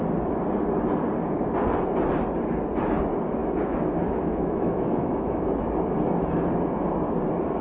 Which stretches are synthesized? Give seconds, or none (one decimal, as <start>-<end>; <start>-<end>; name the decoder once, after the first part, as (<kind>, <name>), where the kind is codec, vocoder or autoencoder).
3.4-5.5 (autoencoder, DAC-VAE)